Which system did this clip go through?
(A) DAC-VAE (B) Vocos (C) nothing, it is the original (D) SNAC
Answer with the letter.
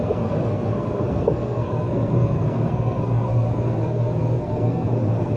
D